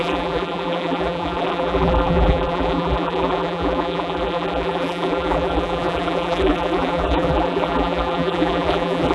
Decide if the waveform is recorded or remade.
remade